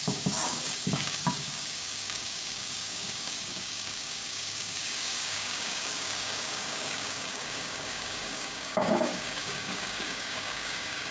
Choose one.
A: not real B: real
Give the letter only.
A